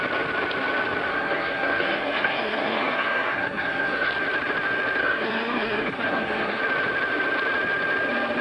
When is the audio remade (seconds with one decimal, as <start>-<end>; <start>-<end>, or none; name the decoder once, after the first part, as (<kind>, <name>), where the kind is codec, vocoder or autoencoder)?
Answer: 1.1-4.1 (codec, SNAC); 5.0-6.6